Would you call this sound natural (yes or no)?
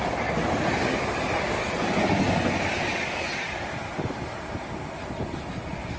yes